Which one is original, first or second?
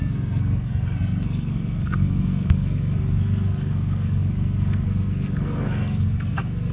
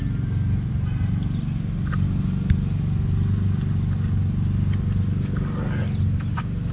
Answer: second